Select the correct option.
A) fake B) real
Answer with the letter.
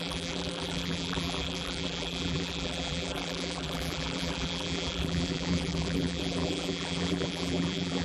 A